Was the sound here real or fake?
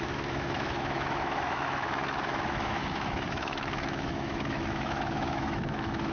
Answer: fake